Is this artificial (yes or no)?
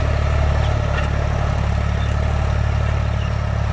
no